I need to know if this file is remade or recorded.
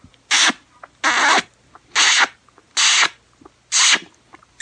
recorded